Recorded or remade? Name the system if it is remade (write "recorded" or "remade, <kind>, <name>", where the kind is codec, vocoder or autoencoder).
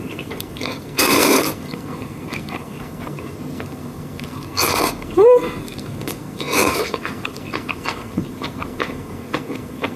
remade, codec, SNAC